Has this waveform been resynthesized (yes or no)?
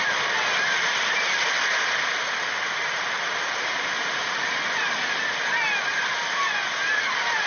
no